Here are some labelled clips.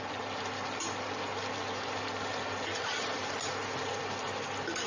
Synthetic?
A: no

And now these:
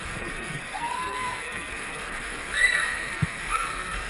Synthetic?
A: yes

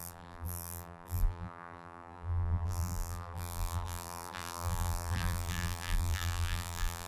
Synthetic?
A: yes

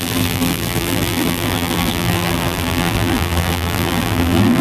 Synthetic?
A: yes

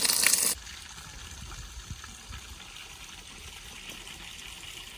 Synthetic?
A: no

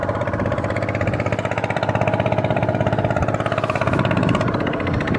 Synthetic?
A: yes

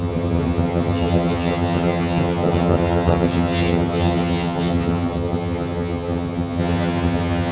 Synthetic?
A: yes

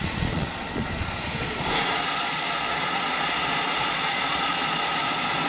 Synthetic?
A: yes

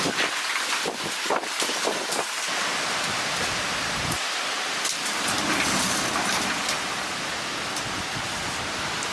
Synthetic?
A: no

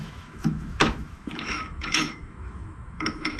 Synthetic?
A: yes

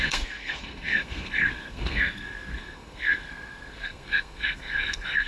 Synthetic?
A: yes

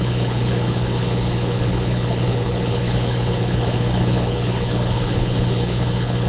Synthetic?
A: yes